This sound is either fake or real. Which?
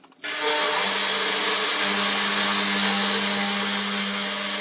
real